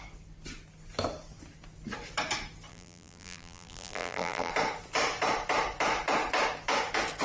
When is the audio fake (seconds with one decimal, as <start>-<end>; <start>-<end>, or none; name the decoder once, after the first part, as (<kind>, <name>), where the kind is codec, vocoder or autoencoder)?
2.7-4.5 (vocoder, BigVGAN v2)